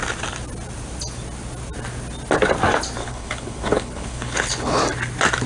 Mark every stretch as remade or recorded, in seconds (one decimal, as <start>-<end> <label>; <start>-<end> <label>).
0.0-3.0 recorded; 3.0-4.8 remade; 4.8-5.5 recorded